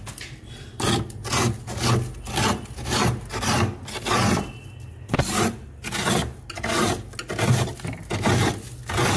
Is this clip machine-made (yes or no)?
no